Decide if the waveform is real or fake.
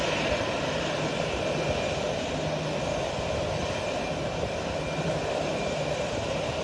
real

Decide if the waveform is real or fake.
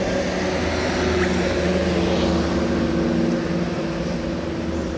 real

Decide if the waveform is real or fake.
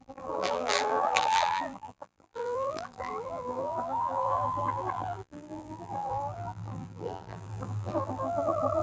fake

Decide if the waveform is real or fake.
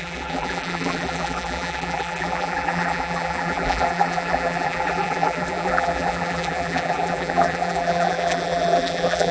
fake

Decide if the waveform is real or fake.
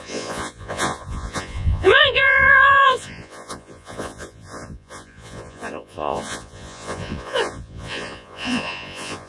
fake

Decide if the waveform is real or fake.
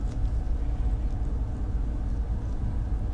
real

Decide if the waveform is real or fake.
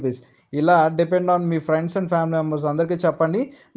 real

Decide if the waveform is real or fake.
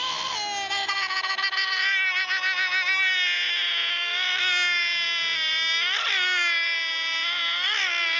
real